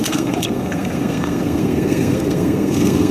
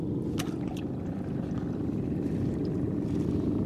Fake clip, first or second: first